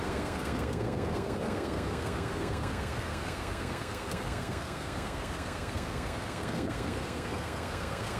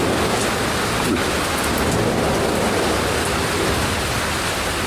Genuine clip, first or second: second